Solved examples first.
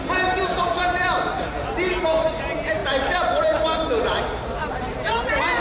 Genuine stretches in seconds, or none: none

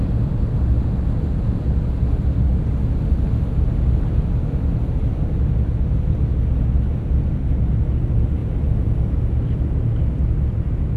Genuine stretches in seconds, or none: 0.0-8.4; 9.0-11.0